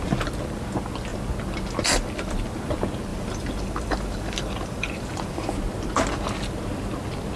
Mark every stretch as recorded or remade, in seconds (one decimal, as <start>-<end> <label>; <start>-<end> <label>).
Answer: 0.0-3.1 recorded; 3.1-5.5 remade; 5.5-7.4 recorded